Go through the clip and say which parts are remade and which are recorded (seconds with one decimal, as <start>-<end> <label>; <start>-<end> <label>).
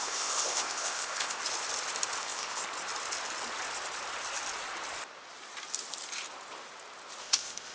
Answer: 0.0-1.4 remade; 1.4-2.2 recorded; 2.2-2.6 remade; 2.6-7.2 recorded; 7.2-7.7 remade